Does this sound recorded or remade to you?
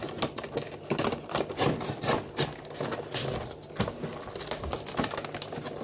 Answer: recorded